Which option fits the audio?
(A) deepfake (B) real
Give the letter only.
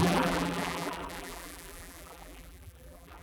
A